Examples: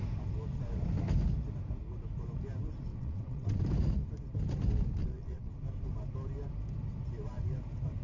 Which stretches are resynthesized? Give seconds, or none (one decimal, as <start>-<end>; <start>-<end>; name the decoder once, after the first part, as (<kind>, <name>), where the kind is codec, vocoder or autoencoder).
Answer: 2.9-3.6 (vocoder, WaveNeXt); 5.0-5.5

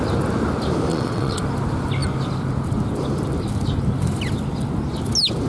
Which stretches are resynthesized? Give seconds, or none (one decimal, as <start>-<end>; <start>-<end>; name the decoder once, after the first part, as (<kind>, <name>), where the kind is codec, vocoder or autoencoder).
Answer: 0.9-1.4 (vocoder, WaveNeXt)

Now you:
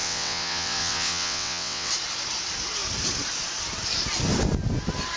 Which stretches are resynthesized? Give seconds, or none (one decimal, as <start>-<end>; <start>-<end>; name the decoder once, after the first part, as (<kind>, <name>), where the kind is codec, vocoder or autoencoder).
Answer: 0.0-1.9 (vocoder, WaveNeXt)